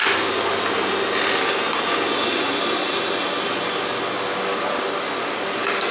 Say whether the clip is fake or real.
real